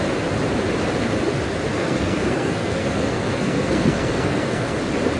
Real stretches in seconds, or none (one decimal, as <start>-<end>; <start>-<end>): 0.0-1.7; 4.8-5.2